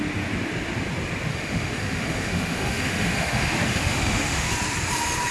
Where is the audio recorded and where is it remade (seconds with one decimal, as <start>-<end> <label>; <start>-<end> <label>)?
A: 0.0-1.3 recorded; 1.3-4.5 remade; 4.5-5.3 recorded